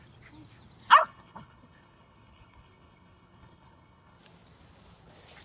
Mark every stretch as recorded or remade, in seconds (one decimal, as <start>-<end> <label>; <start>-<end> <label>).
0.0-1.0 recorded; 1.0-4.2 remade; 4.2-5.4 recorded